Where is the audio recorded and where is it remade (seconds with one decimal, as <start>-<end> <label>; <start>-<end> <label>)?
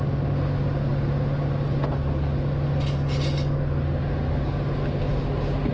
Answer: 0.0-5.7 recorded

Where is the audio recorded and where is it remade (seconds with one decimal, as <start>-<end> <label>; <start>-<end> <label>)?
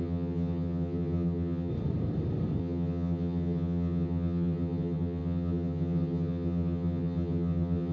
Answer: 0.0-1.7 remade; 1.7-2.6 recorded; 2.6-7.9 remade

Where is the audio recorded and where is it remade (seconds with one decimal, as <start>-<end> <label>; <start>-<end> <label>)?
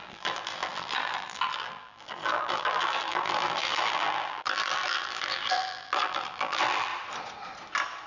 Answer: 0.0-6.9 remade; 6.9-8.1 recorded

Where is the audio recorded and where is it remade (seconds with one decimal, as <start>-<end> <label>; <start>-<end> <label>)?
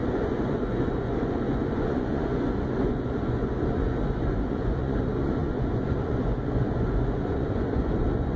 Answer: 0.0-8.4 remade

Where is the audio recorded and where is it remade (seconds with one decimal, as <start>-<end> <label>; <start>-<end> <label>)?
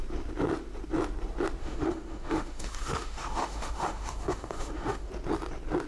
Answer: 0.0-1.6 recorded; 1.6-5.1 remade; 5.1-5.9 recorded